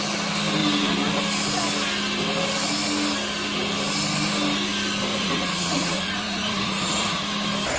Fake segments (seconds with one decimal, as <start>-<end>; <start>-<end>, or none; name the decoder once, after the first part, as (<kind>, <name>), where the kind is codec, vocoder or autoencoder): 5.1-7.2 (vocoder, Vocos)